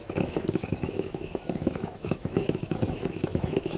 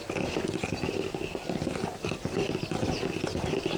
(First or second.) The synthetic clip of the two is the first